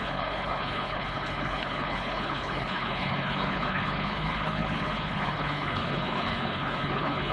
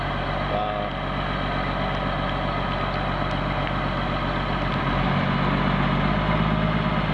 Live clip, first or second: second